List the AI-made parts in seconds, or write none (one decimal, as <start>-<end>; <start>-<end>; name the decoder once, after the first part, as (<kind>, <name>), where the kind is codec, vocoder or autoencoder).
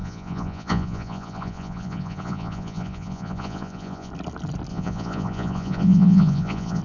0.0-4.1 (vocoder, Vocos); 4.7-6.8